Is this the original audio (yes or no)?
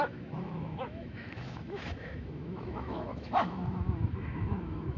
no